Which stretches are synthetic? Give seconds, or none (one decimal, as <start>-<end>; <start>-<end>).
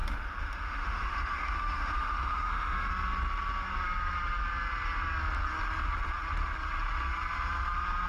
0.0-2.9